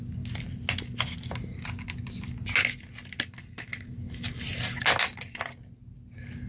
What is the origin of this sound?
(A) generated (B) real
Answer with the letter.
B